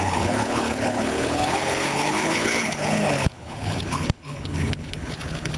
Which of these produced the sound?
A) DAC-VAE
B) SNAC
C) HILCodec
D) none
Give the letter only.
C